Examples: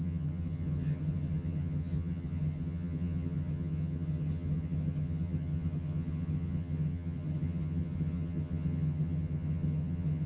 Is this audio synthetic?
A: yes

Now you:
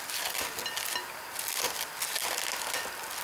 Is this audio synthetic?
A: no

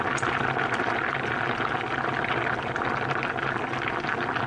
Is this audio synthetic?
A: no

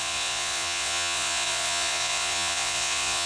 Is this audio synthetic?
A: yes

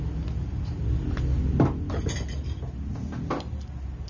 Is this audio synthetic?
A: no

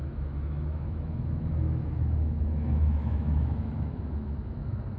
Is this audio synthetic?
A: yes